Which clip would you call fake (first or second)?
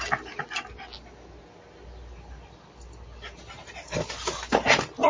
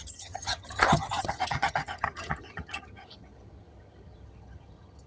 second